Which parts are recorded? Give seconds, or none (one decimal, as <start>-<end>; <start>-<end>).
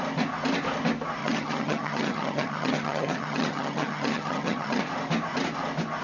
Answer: 0.0-1.2; 4.8-6.0